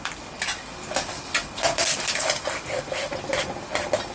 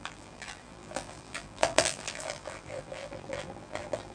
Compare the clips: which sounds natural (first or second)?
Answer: first